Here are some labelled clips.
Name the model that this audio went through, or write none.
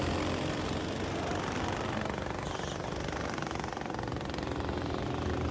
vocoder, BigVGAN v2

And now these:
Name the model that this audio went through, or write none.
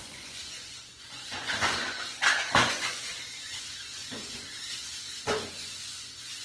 vocoder, Vocos